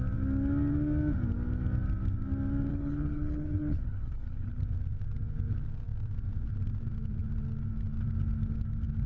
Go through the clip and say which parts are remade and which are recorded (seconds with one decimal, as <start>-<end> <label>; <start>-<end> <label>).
0.0-2.7 recorded; 2.7-4.6 remade; 4.6-9.1 recorded